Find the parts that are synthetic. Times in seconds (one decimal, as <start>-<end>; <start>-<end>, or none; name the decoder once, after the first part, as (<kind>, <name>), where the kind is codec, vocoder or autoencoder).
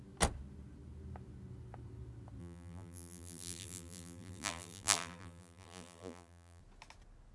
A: 2.4-6.6 (vocoder, BigVGAN v2)